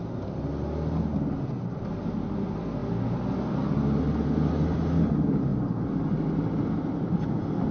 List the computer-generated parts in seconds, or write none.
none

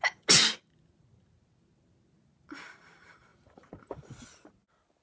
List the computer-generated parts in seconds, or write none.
none

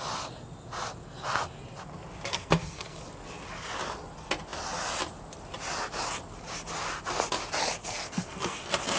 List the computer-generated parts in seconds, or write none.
2.3-3.0 (codec, SNAC); 7.8-8.6

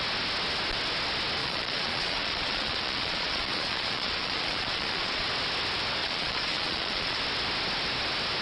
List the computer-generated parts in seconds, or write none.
1.4-5.2 (vocoder, Vocos); 6.0-7.2